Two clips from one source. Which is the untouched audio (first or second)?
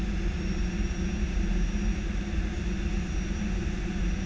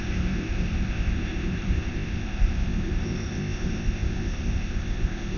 first